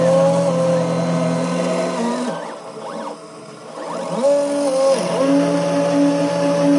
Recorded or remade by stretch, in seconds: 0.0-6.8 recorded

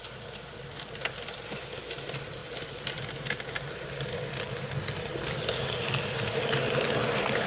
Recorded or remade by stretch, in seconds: 0.0-7.5 recorded

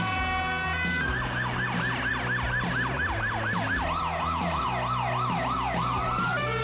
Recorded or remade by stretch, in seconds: 0.0-6.6 recorded

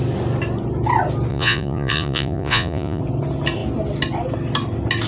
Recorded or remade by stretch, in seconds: 0.0-1.3 recorded; 1.3-3.0 remade; 3.0-5.1 recorded